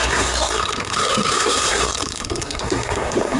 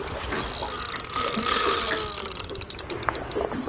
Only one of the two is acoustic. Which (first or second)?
second